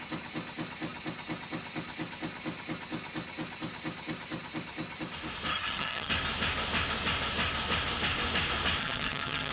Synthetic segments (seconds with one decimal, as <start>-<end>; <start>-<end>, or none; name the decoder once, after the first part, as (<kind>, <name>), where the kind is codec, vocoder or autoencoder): 5.5-6.1 (vocoder, HiFi-GAN); 8.8-9.5